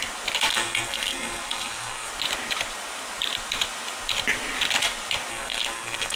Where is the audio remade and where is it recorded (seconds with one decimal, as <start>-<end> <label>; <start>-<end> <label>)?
0.0-0.5 recorded; 0.5-2.1 remade; 2.1-5.3 recorded; 5.3-6.2 remade